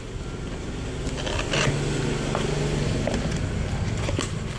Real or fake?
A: real